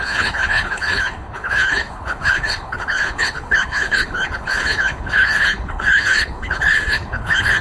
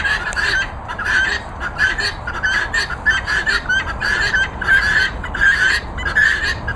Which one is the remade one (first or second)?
first